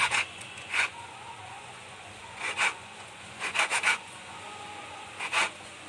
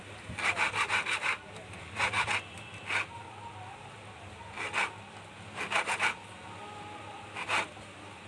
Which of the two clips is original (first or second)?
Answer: second